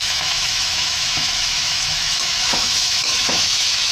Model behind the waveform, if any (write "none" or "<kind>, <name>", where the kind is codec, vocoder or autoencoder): autoencoder, DAC-VAE